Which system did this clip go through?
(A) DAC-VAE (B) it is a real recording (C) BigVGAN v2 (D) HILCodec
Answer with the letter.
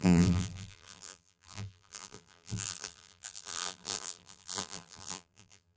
C